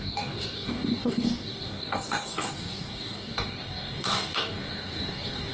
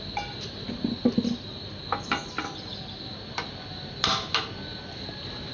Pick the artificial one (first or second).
first